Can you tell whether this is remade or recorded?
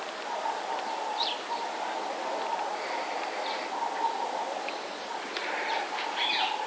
recorded